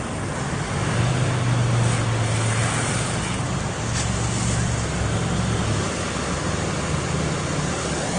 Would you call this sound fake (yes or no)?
no